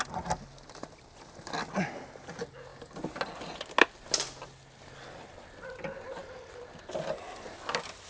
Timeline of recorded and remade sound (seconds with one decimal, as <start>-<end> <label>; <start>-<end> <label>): 0.0-8.1 recorded